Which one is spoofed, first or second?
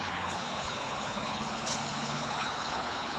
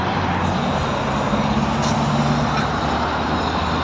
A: first